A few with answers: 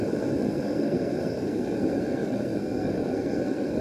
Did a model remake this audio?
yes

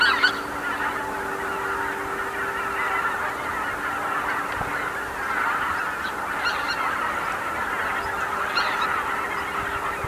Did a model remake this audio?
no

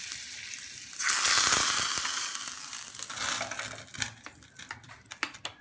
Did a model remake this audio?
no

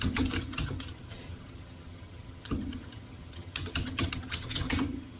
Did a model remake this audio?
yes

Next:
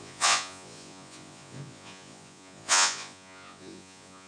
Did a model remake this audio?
yes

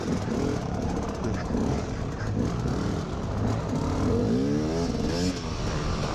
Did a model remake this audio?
no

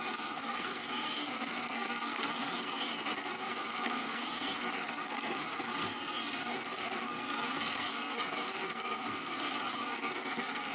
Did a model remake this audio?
yes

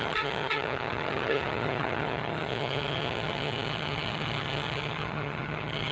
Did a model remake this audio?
yes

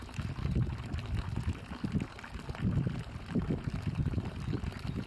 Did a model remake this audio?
no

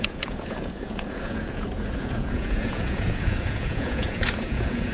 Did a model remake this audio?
yes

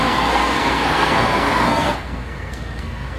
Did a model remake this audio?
yes